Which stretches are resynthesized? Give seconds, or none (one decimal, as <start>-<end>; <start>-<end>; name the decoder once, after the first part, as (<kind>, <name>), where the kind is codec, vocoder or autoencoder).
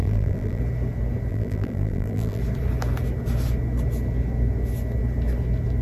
0.0-0.6 (vocoder, BigVGAN v2); 1.3-2.4